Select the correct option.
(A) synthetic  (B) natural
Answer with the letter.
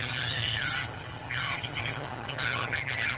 A